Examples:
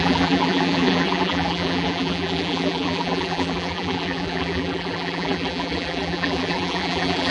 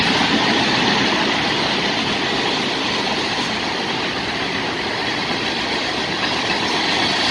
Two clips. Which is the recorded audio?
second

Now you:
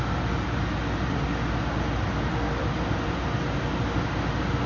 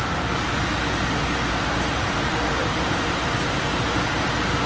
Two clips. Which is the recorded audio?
first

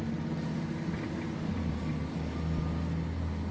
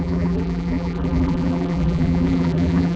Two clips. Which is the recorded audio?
first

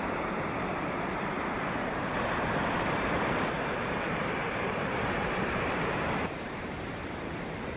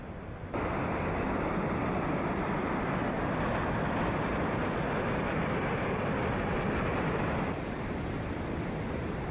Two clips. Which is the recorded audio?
second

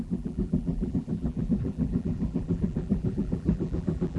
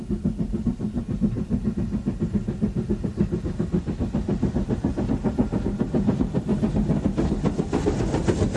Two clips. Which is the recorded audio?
second